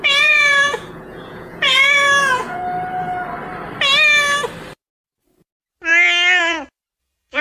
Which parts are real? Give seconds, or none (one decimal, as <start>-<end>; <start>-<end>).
2.6-7.0